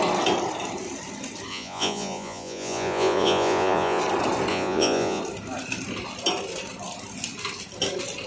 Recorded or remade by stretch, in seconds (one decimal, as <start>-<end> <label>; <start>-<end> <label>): 0.0-1.5 recorded; 1.5-4.0 remade; 4.0-4.5 recorded; 4.5-5.2 remade; 5.2-8.3 recorded